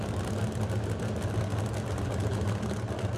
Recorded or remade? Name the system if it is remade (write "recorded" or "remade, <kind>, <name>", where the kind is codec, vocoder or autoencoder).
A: recorded